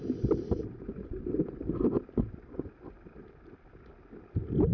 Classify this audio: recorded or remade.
recorded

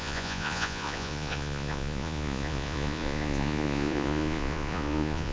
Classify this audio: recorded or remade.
remade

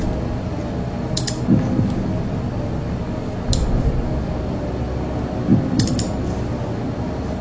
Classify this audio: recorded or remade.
recorded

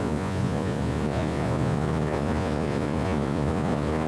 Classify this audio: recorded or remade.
remade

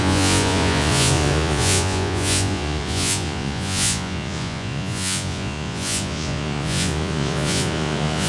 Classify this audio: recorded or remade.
remade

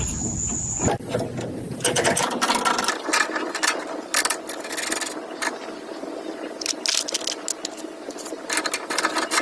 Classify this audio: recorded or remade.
recorded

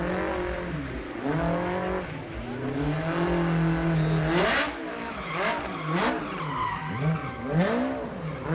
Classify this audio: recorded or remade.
recorded